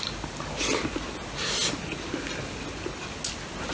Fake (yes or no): no